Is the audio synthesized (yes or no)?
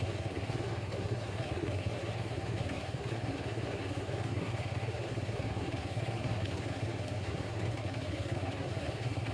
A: yes